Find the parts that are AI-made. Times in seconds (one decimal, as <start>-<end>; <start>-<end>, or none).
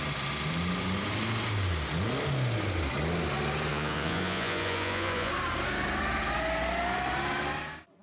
3.7-5.3